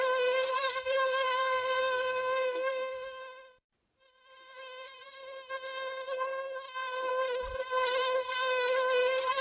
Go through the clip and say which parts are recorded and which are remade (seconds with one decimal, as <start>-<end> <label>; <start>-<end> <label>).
0.0-0.5 recorded; 0.5-3.2 remade; 3.2-9.4 recorded